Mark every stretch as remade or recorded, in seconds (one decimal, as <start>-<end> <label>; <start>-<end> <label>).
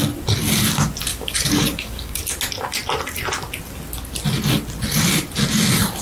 0.0-1.1 recorded; 1.1-2.2 remade; 2.2-6.0 recorded